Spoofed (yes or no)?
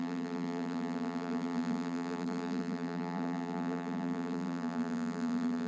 yes